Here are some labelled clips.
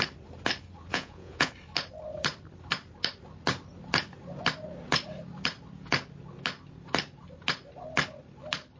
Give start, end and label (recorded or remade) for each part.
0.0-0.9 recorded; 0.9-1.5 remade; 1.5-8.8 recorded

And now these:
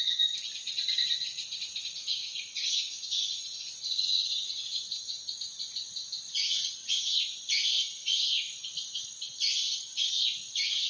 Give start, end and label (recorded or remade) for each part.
0.0-1.0 recorded; 1.0-1.6 remade; 1.6-2.2 recorded; 2.2-6.6 remade; 6.6-8.0 recorded; 8.0-10.1 remade; 10.1-10.9 recorded

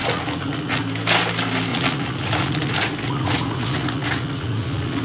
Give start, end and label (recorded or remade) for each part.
0.0-0.8 remade; 0.8-1.7 recorded; 1.7-5.0 remade

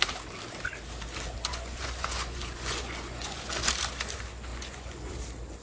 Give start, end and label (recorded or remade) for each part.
0.0-1.5 recorded; 1.5-3.6 remade; 3.6-4.5 recorded; 4.5-5.1 remade; 5.1-5.6 recorded

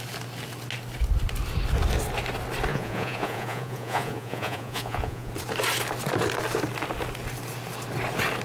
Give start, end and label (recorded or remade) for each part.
0.0-2.7 recorded; 2.7-5.3 remade; 5.3-8.4 recorded

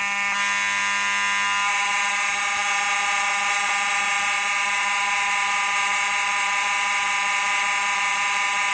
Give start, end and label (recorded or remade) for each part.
0.0-8.7 recorded

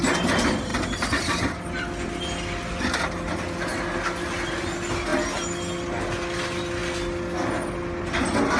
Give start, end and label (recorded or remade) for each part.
0.0-8.6 recorded

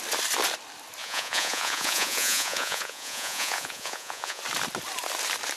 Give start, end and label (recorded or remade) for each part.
0.0-1.0 recorded; 1.0-4.4 remade; 4.4-5.6 recorded